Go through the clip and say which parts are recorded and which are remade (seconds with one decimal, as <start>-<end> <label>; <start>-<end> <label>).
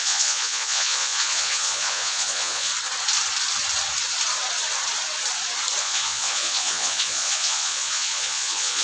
0.0-2.7 remade; 2.7-5.8 recorded; 5.8-8.8 remade